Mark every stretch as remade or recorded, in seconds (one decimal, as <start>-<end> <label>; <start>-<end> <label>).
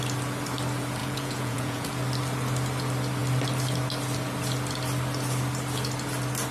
0.0-1.0 recorded; 1.0-1.9 remade; 1.9-6.5 recorded